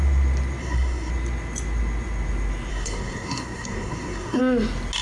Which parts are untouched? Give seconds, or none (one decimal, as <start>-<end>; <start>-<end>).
0.0-0.6; 1.1-2.7; 4.4-5.0